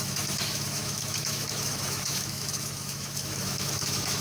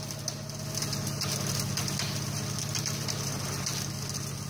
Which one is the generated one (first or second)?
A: first